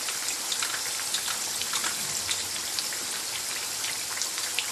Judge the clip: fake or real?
real